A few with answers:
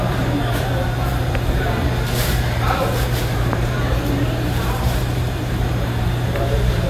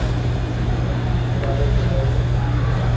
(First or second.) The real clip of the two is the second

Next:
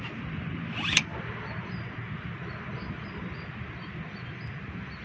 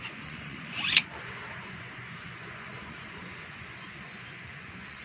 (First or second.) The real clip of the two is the first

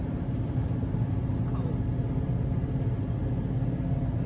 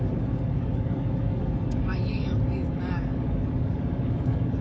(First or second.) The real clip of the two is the first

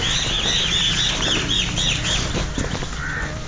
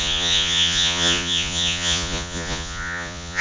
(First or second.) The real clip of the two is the first